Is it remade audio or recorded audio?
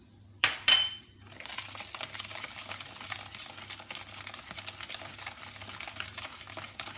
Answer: remade